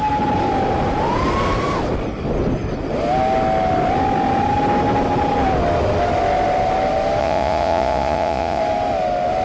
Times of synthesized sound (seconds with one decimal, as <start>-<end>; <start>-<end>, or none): 7.2-8.6